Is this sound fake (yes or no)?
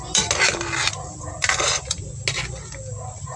no